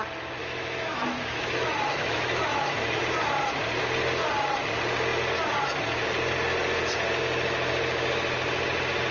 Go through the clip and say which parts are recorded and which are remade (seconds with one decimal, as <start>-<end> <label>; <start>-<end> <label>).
0.0-0.4 recorded; 0.4-3.0 remade; 3.0-9.1 recorded